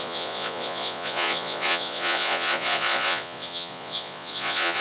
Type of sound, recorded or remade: remade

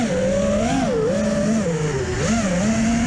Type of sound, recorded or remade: recorded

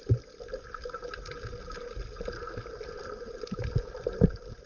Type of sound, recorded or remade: recorded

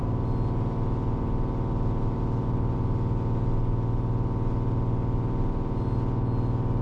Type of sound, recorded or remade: recorded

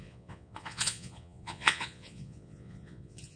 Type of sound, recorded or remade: remade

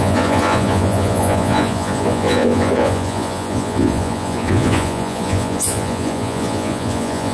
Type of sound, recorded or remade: remade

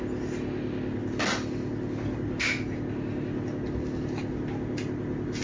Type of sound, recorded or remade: recorded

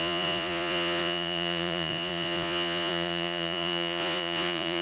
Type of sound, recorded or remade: remade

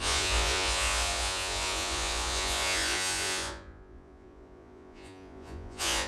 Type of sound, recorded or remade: remade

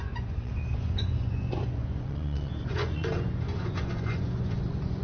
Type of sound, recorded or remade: remade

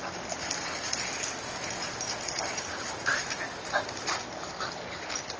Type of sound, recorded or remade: recorded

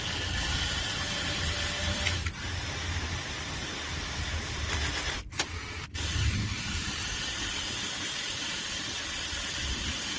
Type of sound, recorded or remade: recorded